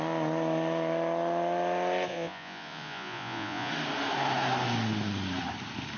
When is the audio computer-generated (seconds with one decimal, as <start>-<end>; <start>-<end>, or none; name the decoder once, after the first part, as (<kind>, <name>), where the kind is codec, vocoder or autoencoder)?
2.1-3.7 (vocoder, Vocos)